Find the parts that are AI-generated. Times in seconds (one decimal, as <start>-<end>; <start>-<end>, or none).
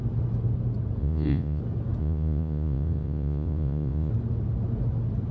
1.0-1.6; 2.0-4.1